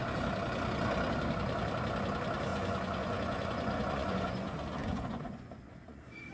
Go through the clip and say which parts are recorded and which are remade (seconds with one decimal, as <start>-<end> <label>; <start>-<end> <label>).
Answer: 0.0-2.5 recorded; 2.5-6.3 remade